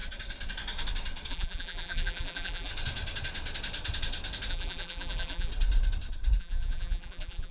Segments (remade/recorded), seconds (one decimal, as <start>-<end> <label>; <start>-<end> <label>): 0.0-1.3 recorded; 1.3-2.7 remade; 2.7-4.5 recorded; 4.5-5.5 remade; 5.5-6.4 recorded; 6.4-7.5 remade